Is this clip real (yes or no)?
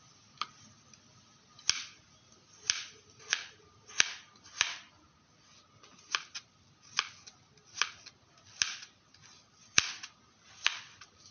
yes